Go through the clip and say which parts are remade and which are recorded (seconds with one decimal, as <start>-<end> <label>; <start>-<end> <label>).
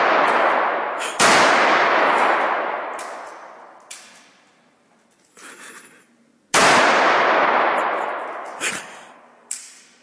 0.0-10.0 recorded